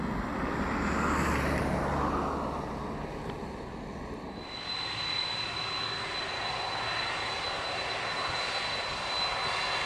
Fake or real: real